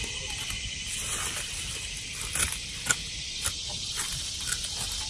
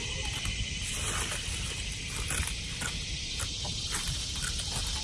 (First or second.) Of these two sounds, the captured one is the second